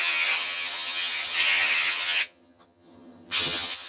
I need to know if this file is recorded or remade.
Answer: remade